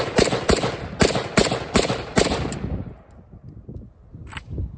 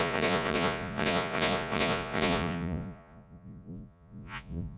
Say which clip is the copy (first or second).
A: second